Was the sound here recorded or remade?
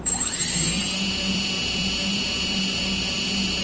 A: remade